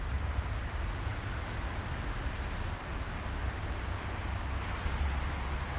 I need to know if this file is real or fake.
real